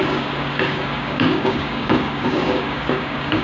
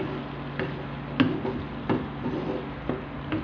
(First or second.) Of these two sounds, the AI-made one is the first